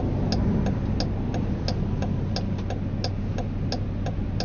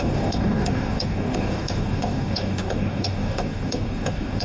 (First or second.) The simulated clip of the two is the second